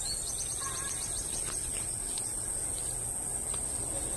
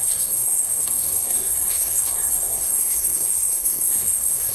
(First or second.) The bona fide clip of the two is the first